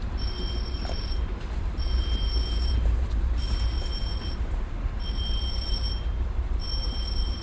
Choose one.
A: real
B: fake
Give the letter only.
B